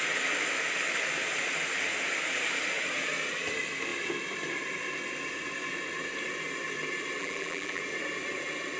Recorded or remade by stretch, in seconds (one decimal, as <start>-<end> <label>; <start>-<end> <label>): 0.0-7.2 recorded; 7.2-7.8 remade; 7.8-8.8 recorded